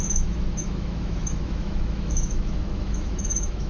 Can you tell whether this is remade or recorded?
remade